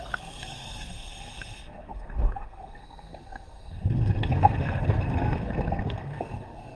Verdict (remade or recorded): remade